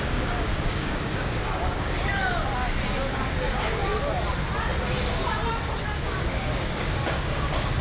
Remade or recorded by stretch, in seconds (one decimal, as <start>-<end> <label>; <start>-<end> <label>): 0.0-2.3 remade; 2.3-3.1 recorded; 3.1-3.9 remade; 3.9-6.1 recorded; 6.1-7.8 remade